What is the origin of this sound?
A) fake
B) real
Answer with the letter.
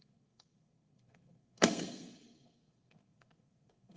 A